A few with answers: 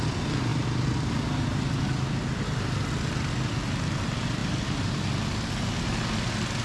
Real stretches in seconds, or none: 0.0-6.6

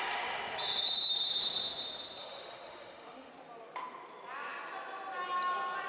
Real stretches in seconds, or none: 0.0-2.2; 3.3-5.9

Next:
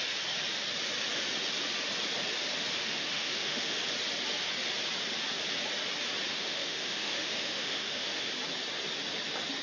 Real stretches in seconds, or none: 0.0-2.8; 3.8-6.3; 8.3-9.6

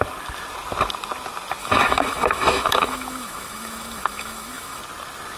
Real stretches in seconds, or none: 0.0-1.6; 4.8-5.4

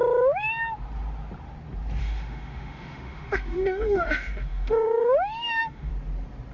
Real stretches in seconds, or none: 0.0-2.0; 5.9-6.5